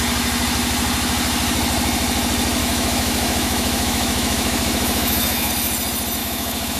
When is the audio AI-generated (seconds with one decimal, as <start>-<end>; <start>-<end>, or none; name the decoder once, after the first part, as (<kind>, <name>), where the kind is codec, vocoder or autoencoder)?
2.6-5.5 (autoencoder, DAC-VAE); 6.2-6.8